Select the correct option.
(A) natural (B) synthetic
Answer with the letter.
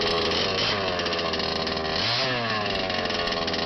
A